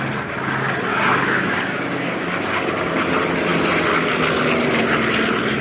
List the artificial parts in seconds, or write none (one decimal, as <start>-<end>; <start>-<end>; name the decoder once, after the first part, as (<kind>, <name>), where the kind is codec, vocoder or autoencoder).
0.9-2.9 (codec, DAC)